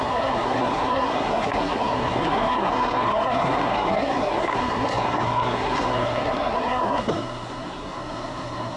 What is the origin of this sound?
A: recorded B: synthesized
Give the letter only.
B